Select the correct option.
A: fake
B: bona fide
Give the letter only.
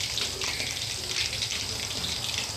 B